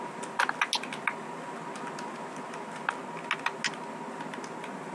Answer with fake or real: real